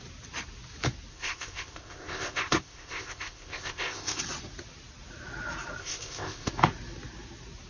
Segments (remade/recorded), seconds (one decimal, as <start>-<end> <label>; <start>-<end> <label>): 0.0-1.1 recorded; 1.1-4.2 remade; 4.2-5.8 recorded; 5.8-6.5 remade; 6.5-7.7 recorded